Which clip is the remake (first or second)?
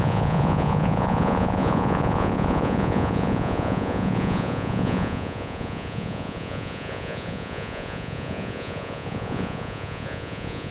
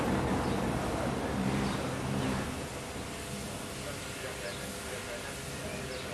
first